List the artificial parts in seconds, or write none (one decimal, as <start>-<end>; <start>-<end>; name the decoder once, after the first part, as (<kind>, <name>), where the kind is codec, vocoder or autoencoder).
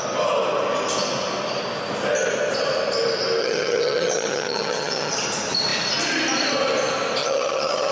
3.4-5.1 (vocoder, HiFi-GAN); 7.2-7.9